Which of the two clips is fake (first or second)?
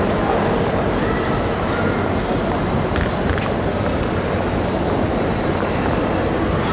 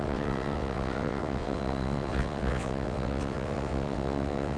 second